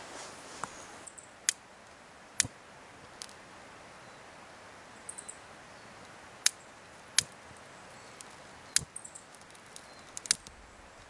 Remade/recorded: recorded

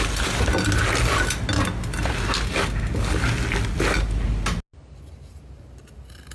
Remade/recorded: recorded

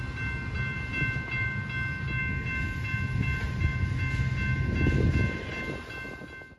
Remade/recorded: recorded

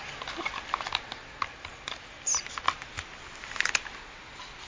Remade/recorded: recorded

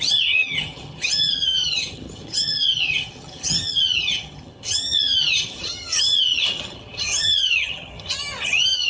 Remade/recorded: remade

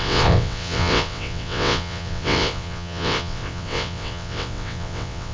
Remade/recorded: remade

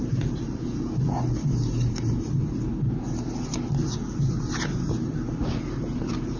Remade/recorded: remade